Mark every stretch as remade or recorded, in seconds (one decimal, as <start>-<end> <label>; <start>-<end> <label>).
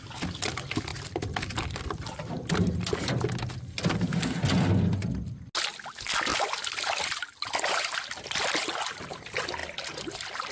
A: 0.0-10.5 recorded